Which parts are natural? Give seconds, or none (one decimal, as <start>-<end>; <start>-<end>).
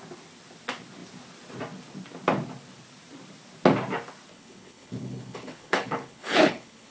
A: 0.0-4.3